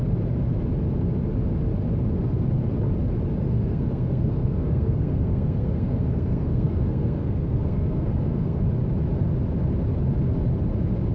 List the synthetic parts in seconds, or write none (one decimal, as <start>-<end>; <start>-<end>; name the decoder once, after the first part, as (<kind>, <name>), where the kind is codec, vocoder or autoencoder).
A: 3.4-8.6 (codec, SNAC)